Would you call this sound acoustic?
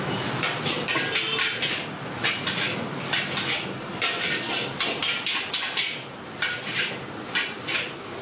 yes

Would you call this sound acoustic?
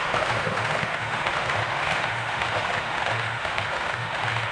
no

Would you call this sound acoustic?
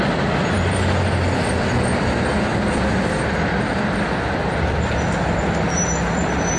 yes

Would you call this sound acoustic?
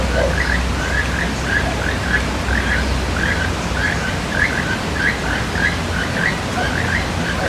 yes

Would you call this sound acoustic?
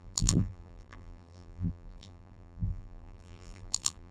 no